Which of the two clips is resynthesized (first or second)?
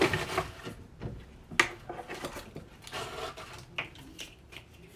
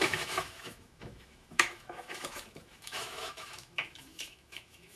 second